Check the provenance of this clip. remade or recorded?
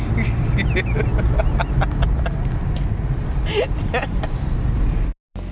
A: recorded